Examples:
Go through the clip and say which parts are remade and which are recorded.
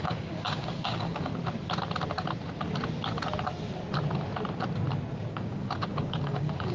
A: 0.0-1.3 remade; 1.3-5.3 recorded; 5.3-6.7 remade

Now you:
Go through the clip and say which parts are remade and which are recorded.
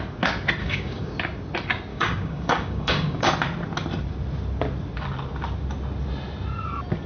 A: 0.0-0.6 recorded; 0.6-1.2 remade; 1.2-1.9 recorded; 1.9-3.3 remade; 3.3-7.1 recorded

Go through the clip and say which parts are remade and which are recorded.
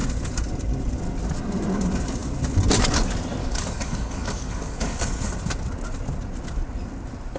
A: 0.0-3.4 recorded; 3.4-5.3 remade; 5.3-7.4 recorded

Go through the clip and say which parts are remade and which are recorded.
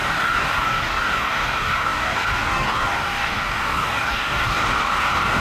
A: 0.0-5.4 remade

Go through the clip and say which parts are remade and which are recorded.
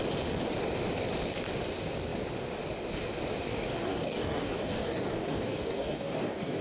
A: 0.0-3.5 recorded; 3.5-6.6 remade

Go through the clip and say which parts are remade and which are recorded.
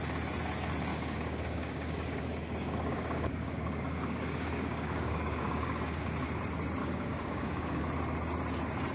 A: 0.0-0.9 recorded; 0.9-6.1 remade; 6.1-6.8 recorded; 6.8-7.8 remade; 7.8-8.9 recorded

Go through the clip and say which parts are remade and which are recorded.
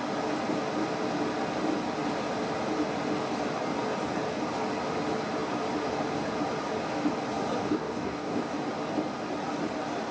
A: 0.0-7.6 recorded; 7.6-8.5 remade; 8.5-10.1 recorded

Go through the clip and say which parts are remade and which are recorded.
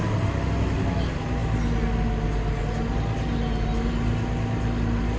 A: 0.0-5.2 recorded